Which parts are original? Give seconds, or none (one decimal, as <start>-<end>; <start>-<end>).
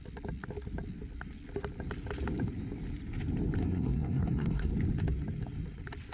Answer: 0.0-3.6; 4.7-6.1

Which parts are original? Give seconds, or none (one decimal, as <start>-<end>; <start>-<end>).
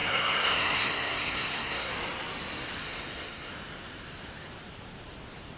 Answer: 1.9-2.8; 3.5-5.6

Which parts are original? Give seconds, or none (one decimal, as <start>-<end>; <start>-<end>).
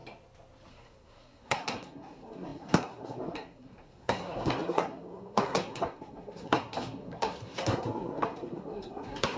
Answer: 0.0-0.7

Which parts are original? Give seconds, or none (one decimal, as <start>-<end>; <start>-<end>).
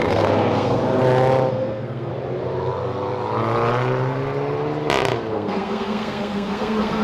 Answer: 0.8-1.5; 2.1-5.3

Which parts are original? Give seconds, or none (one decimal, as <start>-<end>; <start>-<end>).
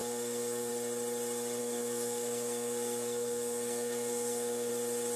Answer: 0.7-1.6; 4.7-5.2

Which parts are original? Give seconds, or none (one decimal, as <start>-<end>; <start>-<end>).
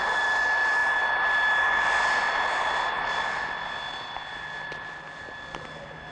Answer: 0.0-6.1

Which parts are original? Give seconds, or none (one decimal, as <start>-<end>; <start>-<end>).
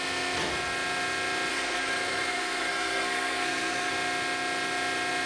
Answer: 0.0-1.5; 3.9-5.3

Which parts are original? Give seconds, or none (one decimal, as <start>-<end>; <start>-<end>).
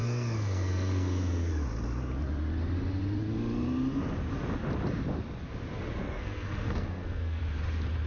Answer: 1.5-6.0; 7.4-8.1